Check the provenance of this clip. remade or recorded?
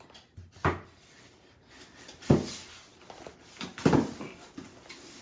recorded